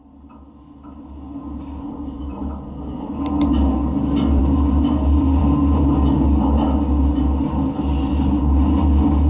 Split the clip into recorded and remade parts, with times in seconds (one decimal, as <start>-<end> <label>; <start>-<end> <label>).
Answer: 0.0-9.3 recorded